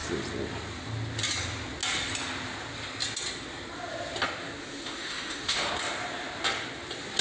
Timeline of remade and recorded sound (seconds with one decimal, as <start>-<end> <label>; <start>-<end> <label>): 0.0-4.6 recorded; 4.6-5.7 remade; 5.7-7.2 recorded